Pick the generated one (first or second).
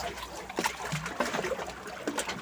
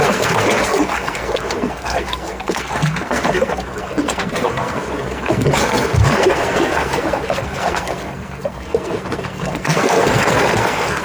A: second